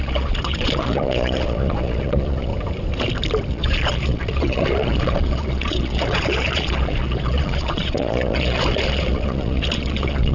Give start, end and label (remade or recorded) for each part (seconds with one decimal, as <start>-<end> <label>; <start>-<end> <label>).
0.0-2.5 remade; 2.5-3.5 recorded; 3.5-10.3 remade